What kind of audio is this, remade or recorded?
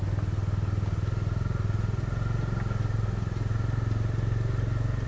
recorded